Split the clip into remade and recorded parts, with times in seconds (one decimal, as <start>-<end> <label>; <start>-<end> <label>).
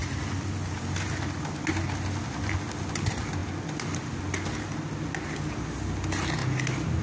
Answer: 0.0-7.0 recorded